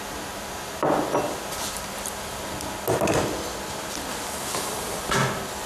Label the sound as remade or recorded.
recorded